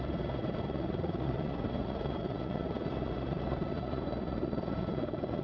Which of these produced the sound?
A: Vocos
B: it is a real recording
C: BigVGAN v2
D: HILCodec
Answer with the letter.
A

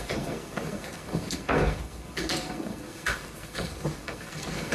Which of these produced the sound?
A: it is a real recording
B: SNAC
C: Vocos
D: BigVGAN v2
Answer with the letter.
B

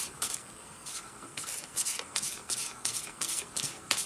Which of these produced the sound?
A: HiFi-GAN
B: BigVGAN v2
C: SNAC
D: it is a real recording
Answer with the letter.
C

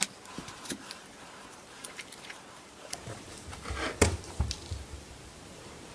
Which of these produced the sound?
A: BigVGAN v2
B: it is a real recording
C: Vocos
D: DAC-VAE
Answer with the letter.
A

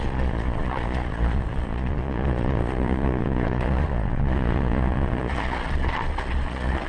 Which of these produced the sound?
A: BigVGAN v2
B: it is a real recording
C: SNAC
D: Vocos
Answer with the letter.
D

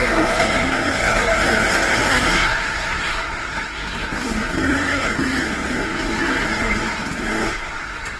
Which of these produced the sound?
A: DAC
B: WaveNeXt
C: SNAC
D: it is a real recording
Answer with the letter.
C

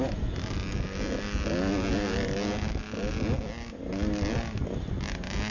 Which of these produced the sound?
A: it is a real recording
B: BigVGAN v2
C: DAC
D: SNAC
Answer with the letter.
A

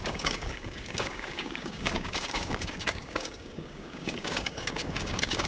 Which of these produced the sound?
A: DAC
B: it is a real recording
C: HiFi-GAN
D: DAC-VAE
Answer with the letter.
A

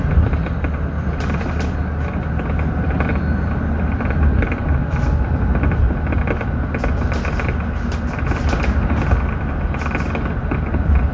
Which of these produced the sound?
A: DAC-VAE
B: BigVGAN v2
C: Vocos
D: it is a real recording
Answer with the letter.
D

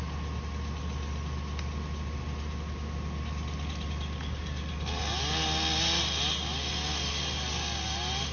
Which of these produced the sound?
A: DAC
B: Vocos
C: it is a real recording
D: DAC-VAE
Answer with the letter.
C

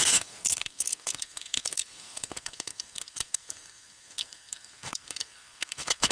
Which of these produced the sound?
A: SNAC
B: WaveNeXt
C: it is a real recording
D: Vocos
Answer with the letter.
A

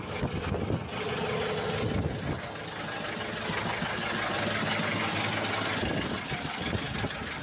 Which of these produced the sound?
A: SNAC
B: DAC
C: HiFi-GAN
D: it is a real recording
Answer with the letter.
D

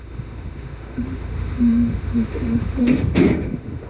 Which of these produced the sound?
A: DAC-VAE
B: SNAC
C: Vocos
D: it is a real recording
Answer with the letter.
A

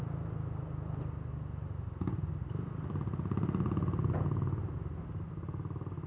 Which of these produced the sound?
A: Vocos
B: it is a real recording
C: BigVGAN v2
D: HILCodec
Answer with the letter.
B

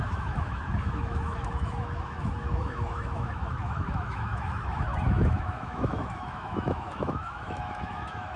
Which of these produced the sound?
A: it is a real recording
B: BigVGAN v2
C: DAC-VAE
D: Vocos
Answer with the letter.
C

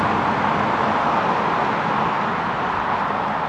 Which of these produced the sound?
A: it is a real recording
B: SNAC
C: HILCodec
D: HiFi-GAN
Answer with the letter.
A